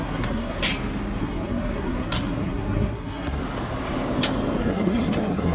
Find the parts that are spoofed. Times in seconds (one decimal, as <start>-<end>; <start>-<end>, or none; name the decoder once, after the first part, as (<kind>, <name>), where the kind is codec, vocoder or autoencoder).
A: 0.0-0.7 (codec, SNAC); 1.2-3.4; 4.6-5.5